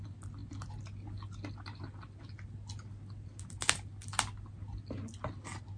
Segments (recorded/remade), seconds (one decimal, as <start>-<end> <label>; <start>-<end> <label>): 0.0-5.8 recorded